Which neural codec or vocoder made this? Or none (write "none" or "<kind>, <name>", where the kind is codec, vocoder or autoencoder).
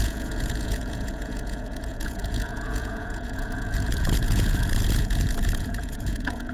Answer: vocoder, Vocos